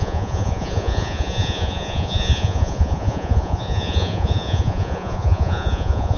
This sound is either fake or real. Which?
fake